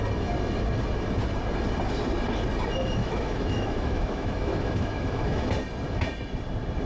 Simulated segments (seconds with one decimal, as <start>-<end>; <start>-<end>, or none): 3.0-5.5